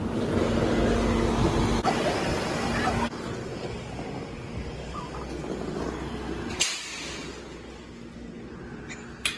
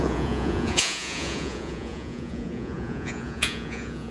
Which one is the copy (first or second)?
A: second